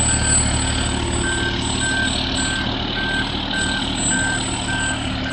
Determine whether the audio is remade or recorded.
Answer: recorded